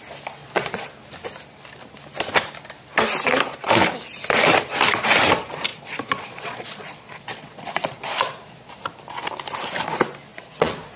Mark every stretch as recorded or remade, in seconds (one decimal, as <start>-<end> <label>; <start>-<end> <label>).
0.0-0.4 recorded; 0.4-0.9 remade; 0.9-5.7 recorded; 5.7-8.7 remade; 8.7-10.3 recorded; 10.3-11.0 remade